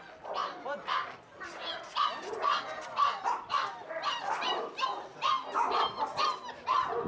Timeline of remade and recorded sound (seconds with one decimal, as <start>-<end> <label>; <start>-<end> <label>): 0.0-7.1 recorded